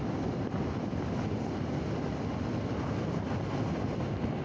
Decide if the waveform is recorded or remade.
recorded